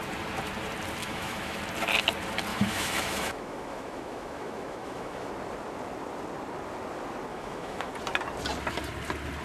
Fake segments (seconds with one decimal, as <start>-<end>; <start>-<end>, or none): 1.0-1.6; 2.5-5.3; 7.3-7.9